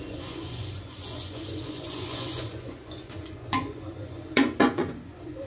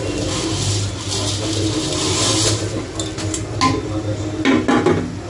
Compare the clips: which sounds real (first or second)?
second